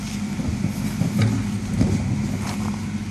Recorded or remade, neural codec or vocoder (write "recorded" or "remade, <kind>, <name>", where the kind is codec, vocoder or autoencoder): recorded